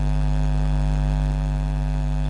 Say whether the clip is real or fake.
real